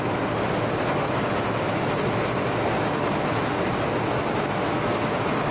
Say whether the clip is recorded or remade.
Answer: recorded